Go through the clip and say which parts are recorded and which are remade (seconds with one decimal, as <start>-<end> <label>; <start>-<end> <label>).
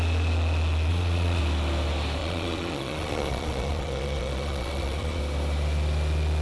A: 0.0-0.9 recorded; 0.9-1.4 remade; 1.4-2.2 recorded; 2.2-5.2 remade; 5.2-6.4 recorded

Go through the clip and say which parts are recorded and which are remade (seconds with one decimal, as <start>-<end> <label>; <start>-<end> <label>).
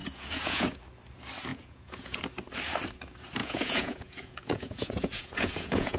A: 0.0-0.8 remade; 0.8-1.5 recorded; 1.5-2.2 remade; 2.2-3.4 recorded; 3.4-6.0 remade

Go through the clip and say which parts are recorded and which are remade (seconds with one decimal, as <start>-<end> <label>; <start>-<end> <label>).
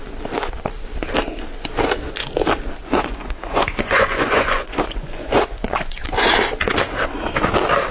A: 0.0-2.8 recorded; 2.8-6.3 remade; 6.3-7.9 recorded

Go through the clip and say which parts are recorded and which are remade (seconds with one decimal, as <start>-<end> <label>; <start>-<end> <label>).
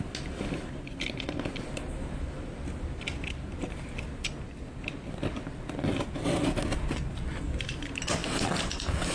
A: 0.0-9.1 recorded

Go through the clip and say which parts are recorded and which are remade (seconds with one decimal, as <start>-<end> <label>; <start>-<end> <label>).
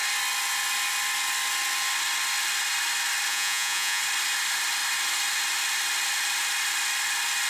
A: 0.0-3.3 recorded; 3.3-4.0 remade; 4.0-7.5 recorded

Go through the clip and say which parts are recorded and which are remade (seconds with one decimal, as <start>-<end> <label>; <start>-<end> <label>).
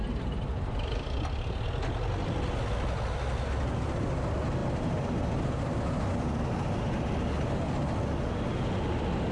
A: 0.0-9.3 recorded